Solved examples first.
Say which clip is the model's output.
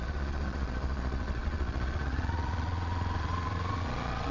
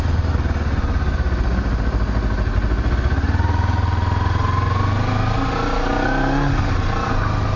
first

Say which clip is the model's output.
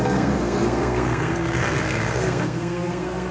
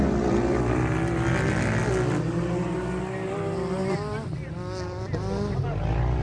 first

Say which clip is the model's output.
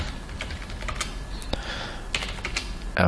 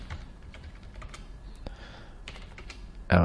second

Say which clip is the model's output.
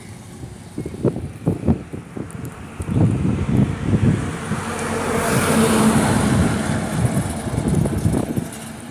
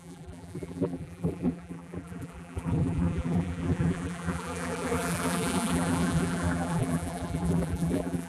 second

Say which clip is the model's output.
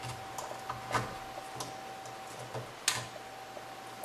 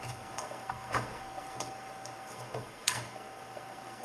second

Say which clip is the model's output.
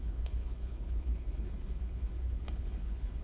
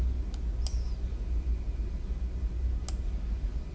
first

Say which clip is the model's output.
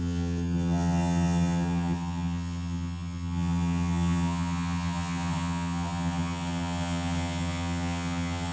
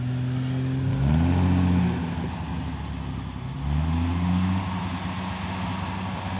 first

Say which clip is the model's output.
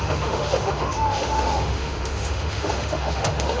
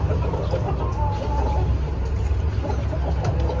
first